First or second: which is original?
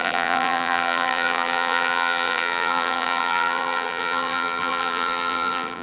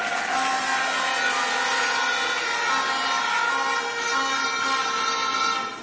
second